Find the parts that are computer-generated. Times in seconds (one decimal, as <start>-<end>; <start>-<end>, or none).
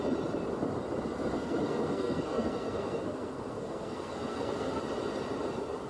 1.3-4.8